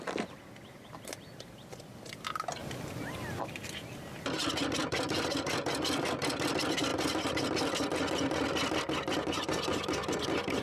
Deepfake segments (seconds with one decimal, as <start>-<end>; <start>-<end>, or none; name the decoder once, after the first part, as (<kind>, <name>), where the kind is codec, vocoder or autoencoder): 0.0-2.6 (vocoder, BigVGAN v2); 3.4-6.9; 8.8-10.6